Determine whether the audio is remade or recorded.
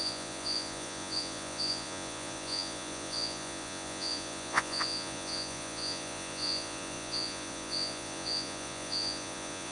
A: remade